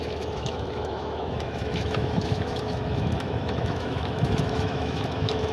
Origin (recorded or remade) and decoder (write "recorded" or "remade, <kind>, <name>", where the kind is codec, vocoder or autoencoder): remade, autoencoder, DAC-VAE